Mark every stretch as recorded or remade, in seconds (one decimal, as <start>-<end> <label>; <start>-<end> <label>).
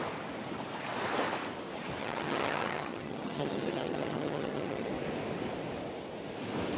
0.0-2.0 recorded; 2.0-4.9 remade; 4.9-6.8 recorded